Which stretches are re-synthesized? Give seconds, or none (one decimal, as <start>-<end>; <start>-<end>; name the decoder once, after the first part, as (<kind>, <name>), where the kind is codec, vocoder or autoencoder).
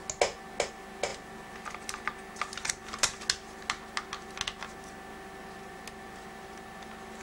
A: none